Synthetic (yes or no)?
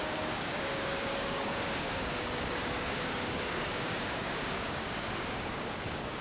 yes